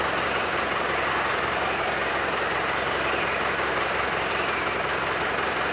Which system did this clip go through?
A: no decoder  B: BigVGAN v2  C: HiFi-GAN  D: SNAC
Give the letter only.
B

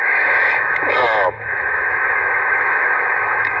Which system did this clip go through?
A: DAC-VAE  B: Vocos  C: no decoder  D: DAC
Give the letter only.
A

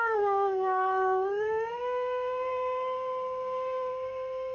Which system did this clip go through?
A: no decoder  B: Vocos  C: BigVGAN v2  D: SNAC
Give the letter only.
D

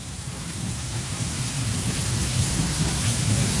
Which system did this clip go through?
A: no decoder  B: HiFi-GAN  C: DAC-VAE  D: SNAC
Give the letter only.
D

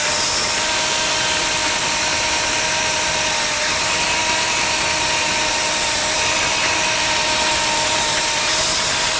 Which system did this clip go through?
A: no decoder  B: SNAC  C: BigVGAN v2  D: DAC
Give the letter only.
A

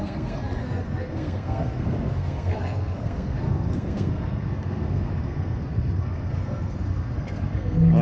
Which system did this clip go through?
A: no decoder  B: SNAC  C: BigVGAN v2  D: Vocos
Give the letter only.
B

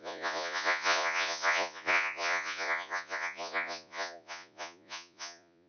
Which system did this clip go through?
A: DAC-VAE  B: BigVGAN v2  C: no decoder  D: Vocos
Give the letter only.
D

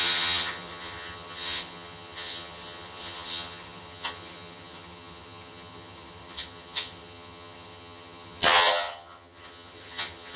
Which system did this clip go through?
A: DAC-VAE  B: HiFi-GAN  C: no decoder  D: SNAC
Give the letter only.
B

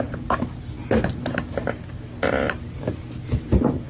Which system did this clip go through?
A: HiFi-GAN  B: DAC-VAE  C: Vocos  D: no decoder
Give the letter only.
D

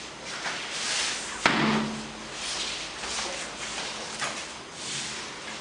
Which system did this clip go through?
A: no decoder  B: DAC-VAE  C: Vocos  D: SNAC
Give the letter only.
A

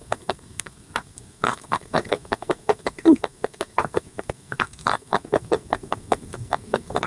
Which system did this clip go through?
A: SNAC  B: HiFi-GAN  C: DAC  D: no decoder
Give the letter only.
A